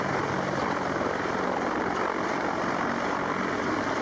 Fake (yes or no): no